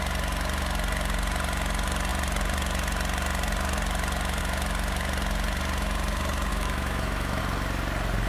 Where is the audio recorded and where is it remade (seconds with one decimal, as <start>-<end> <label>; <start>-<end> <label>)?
0.0-6.5 recorded; 6.5-7.4 remade; 7.4-8.3 recorded